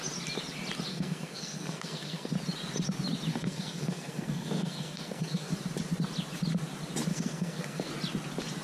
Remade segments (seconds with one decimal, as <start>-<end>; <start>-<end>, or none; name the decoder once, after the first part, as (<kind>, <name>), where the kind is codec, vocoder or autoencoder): 0.9-2.3 (codec, SNAC); 3.3-5.5; 7.1-7.9